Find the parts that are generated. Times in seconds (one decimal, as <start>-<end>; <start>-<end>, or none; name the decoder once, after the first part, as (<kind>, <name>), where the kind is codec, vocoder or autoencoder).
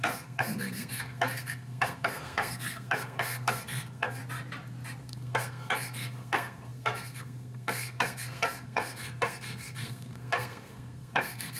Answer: 0.0-4.2 (codec, SNAC); 5.0-11.6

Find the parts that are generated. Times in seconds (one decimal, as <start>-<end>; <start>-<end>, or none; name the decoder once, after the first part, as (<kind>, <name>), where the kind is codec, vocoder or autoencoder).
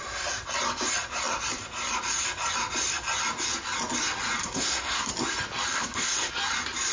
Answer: 4.4-5.1 (codec, SNAC); 5.7-6.3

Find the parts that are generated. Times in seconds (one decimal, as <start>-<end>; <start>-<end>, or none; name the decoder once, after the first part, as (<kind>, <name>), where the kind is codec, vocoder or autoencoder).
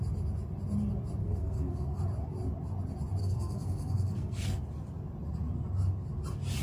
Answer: 1.2-2.0 (codec, SNAC); 3.2-4.6